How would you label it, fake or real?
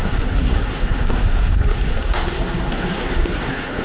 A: fake